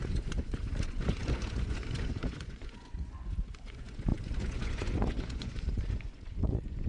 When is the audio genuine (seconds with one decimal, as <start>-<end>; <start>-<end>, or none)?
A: none